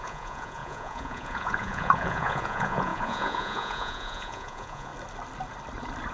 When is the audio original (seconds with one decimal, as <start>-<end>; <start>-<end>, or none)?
4.9-6.1